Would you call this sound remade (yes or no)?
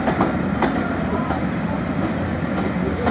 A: no